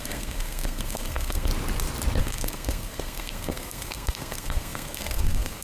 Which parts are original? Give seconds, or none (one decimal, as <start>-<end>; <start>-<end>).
1.5-2.2